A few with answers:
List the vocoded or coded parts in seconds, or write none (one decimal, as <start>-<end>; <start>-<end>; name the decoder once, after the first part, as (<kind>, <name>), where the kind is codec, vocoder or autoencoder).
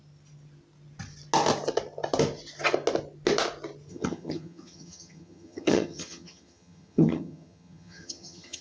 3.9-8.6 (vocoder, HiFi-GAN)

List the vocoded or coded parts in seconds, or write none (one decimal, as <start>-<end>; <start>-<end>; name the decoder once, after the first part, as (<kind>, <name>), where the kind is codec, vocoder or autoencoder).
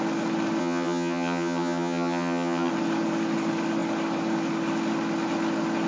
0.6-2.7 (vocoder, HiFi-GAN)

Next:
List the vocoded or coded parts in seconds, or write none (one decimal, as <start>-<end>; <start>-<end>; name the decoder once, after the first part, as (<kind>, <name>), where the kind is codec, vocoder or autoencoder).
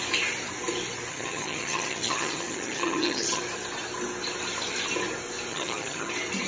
1.1-3.4 (vocoder, HiFi-GAN); 5.5-6.1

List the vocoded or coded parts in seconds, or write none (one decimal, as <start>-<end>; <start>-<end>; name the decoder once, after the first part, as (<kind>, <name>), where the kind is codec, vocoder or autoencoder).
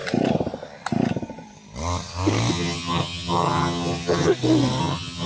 2.5-4.3 (vocoder, HiFi-GAN); 4.8-5.3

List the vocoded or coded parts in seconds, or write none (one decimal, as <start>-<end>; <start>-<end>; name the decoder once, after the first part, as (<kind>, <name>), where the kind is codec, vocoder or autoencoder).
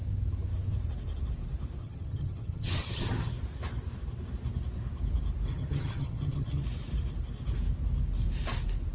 1.8-3.3 (vocoder, HiFi-GAN); 5.5-6.6